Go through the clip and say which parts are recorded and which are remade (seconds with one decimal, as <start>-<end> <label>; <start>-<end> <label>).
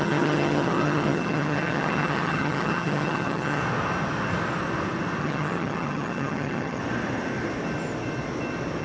0.0-3.6 remade; 3.6-5.2 recorded; 5.2-6.8 remade; 6.8-8.8 recorded